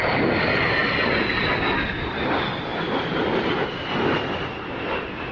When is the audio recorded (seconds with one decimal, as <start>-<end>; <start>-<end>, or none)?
0.0-5.3